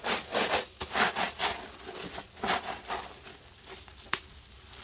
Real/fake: real